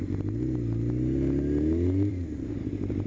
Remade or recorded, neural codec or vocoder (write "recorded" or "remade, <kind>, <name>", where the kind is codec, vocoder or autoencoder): recorded